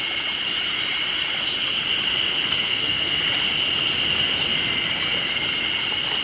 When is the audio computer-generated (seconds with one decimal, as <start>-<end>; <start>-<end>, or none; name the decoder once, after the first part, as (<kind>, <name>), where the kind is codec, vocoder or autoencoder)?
2.3-3.2 (codec, SNAC)